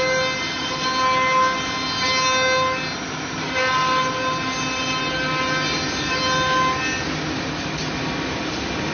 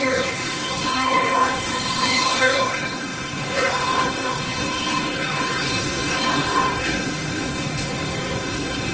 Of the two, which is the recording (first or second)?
first